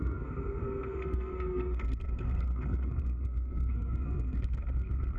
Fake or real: fake